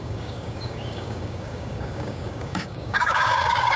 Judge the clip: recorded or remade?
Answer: remade